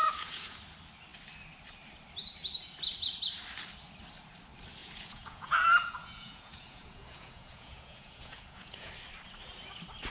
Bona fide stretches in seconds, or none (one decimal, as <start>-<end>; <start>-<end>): 0.6-4.8; 8.9-10.1